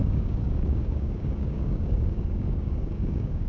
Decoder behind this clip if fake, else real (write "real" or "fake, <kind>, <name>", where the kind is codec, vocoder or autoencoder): fake, codec, DAC